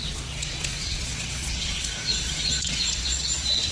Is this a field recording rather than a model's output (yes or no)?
no